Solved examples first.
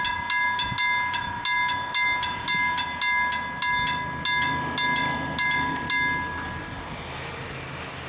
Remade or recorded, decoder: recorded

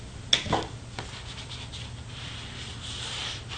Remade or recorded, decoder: recorded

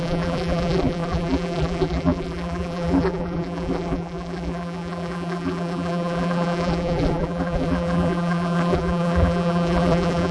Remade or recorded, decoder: remade, vocoder, BigVGAN v2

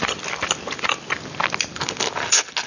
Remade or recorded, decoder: recorded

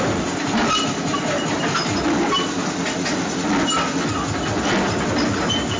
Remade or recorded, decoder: recorded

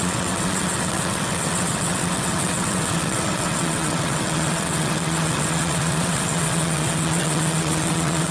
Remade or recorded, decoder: remade, vocoder, WaveNeXt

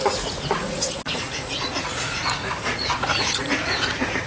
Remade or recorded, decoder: remade, vocoder, Vocos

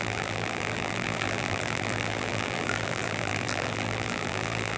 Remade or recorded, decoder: remade, vocoder, BigVGAN v2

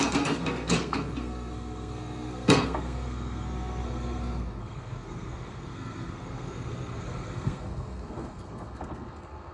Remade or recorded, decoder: remade, codec, SNAC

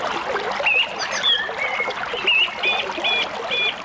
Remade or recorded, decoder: recorded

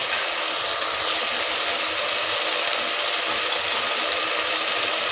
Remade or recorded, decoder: recorded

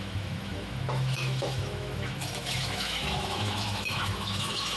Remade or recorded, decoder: remade, autoencoder, DAC-VAE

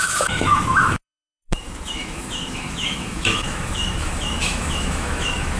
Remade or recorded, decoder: remade, autoencoder, DAC-VAE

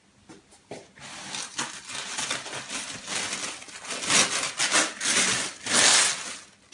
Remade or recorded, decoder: recorded